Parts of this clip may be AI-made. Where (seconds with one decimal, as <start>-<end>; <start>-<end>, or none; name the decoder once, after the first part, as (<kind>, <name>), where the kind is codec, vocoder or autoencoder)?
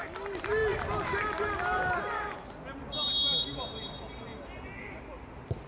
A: none